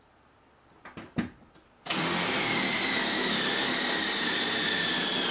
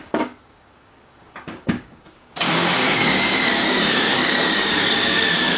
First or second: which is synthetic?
second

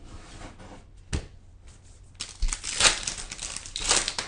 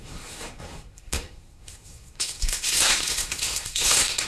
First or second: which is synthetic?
second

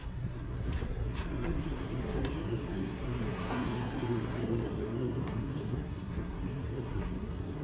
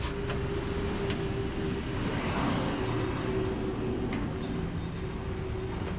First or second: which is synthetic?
first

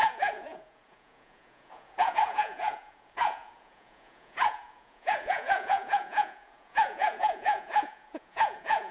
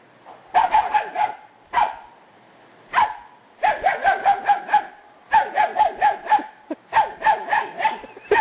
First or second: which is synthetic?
first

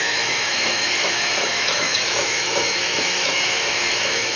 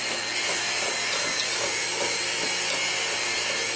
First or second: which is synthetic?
first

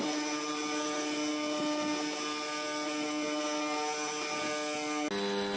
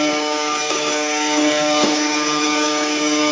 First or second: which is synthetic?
second